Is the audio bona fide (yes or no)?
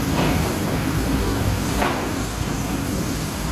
no